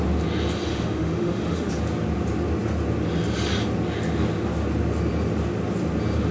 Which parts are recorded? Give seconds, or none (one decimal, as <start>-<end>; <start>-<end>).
0.0-0.7; 1.7-6.3